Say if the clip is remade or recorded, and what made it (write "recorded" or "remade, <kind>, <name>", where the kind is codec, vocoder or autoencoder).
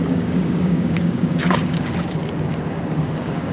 remade, codec, DAC